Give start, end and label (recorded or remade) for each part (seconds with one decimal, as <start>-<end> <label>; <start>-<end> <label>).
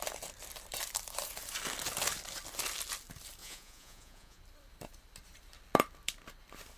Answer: 0.0-3.4 recorded; 3.4-4.4 remade; 4.4-6.8 recorded